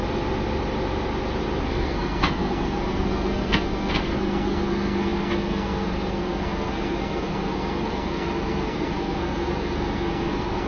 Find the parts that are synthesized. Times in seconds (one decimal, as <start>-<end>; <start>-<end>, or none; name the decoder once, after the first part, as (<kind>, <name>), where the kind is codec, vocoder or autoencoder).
1.6-10.7 (codec, SNAC)